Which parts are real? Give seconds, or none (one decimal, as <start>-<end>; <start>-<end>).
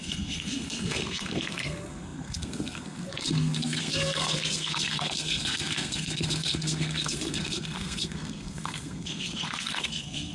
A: none